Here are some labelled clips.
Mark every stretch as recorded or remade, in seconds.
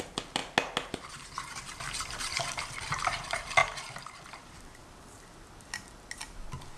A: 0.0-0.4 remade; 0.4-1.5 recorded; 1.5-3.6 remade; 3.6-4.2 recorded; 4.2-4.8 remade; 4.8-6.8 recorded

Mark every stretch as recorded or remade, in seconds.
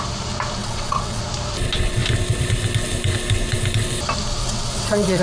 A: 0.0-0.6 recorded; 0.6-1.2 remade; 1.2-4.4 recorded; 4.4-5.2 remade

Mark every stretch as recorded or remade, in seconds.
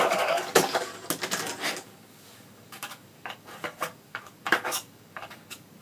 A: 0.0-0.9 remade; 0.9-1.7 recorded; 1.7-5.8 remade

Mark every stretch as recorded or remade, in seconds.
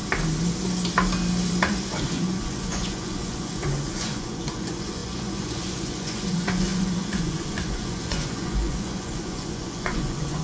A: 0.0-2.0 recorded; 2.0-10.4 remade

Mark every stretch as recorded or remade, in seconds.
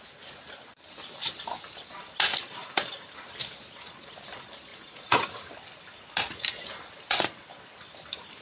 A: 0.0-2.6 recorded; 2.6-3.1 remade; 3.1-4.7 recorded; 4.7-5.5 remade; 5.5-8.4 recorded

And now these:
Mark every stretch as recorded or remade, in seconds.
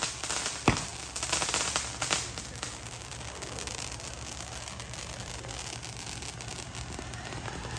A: 0.0-7.8 recorded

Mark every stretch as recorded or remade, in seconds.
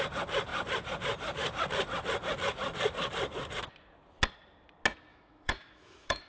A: 0.0-5.1 recorded; 5.1-6.3 remade